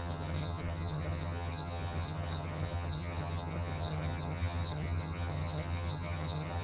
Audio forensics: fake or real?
fake